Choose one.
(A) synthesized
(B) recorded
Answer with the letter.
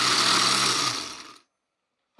B